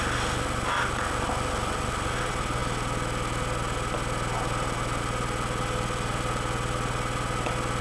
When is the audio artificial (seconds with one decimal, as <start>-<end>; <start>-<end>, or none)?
none